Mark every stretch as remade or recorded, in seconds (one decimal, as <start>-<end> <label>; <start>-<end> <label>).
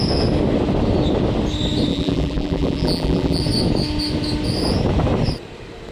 0.0-1.9 recorded; 1.9-3.4 remade; 3.4-5.9 recorded